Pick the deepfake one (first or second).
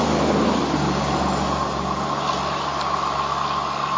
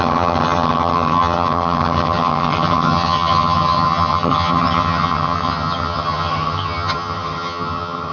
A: second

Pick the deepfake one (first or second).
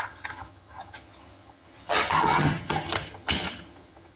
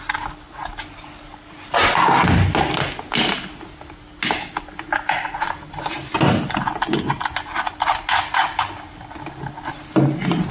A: first